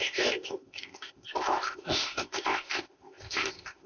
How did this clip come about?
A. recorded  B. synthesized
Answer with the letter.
B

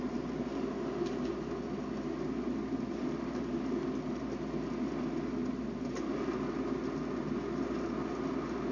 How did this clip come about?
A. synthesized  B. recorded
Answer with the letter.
B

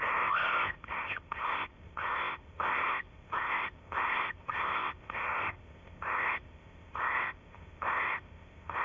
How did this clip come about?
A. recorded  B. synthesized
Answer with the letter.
B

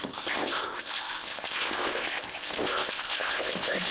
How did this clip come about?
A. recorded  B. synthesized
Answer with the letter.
B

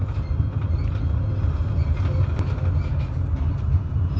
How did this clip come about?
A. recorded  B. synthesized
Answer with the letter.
A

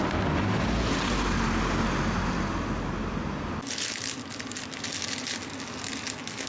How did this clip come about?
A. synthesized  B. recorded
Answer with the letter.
B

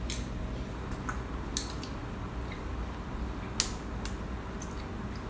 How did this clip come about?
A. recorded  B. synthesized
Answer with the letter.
A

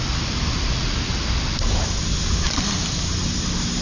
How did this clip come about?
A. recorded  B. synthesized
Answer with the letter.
A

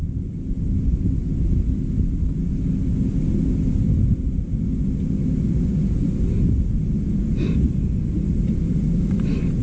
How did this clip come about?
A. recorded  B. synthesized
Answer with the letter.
A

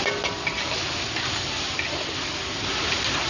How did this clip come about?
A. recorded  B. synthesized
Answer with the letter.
A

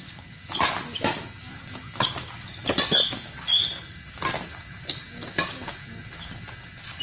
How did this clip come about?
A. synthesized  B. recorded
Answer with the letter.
B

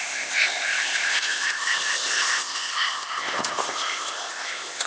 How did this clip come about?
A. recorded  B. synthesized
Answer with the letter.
B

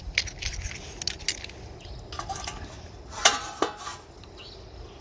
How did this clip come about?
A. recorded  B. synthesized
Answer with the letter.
A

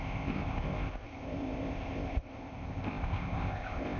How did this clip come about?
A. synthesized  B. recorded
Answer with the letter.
A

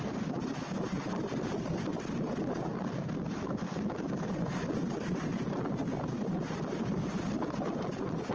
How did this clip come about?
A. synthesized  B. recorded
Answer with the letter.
B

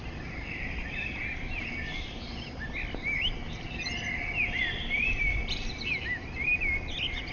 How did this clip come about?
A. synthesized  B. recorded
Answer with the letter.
B